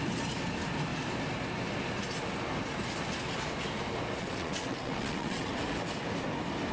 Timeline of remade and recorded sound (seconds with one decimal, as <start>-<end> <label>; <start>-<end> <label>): 0.0-4.2 recorded; 4.2-5.5 remade; 5.5-6.7 recorded